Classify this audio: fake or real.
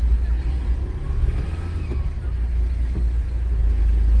real